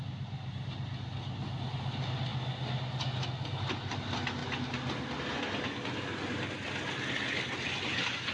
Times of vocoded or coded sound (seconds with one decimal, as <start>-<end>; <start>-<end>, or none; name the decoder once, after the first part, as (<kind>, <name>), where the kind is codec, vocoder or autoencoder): none

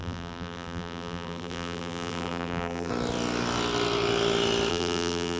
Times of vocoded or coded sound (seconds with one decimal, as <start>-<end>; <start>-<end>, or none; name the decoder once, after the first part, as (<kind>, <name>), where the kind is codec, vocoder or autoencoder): 0.0-2.9 (vocoder, BigVGAN v2); 4.7-5.4

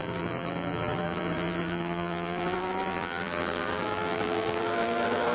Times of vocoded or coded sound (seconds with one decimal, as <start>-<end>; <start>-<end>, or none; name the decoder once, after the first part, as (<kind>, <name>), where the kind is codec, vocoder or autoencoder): 0.0-5.3 (vocoder, BigVGAN v2)

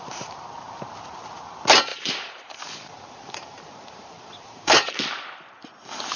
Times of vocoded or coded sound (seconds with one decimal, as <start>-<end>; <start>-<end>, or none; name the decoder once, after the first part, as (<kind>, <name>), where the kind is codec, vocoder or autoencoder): 1.9-4.9 (vocoder, BigVGAN v2)